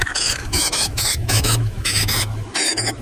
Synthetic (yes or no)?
yes